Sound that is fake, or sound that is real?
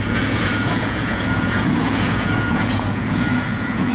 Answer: fake